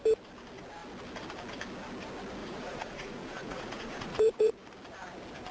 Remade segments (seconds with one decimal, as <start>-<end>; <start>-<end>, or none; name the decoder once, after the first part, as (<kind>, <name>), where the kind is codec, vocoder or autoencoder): 2.4-4.5 (vocoder, Vocos)